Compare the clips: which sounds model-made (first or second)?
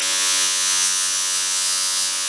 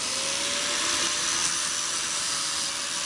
first